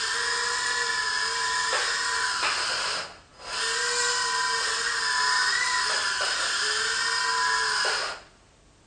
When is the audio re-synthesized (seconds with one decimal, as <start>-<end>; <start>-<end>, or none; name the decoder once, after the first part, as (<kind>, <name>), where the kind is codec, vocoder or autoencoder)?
none